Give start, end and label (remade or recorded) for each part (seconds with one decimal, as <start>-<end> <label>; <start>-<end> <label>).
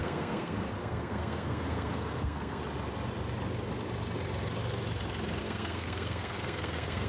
0.0-2.6 remade; 2.6-5.4 recorded; 5.4-7.1 remade